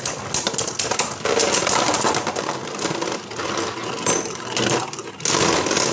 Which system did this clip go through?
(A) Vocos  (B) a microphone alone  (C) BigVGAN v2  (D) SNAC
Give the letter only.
B